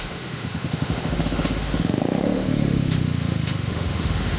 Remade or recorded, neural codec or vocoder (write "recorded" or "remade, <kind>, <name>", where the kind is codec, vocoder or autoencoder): remade, autoencoder, DAC-VAE